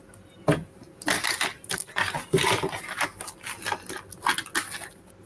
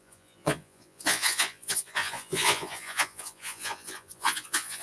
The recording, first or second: first